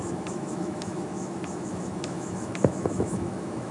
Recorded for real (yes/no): no